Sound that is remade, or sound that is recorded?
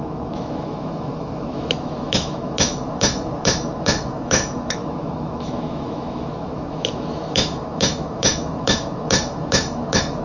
remade